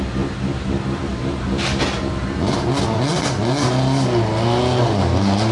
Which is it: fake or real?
real